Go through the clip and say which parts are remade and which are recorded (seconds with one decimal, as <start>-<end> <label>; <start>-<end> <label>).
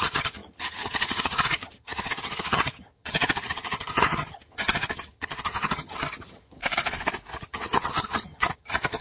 0.0-6.6 remade; 6.6-7.3 recorded; 7.3-9.0 remade